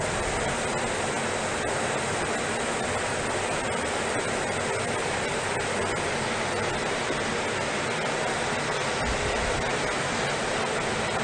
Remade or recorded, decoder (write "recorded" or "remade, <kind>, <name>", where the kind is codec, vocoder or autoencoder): recorded